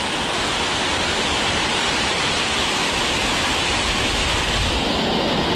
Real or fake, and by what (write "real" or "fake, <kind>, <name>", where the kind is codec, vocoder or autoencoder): real